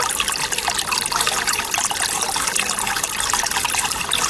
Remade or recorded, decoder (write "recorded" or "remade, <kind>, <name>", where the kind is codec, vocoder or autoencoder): recorded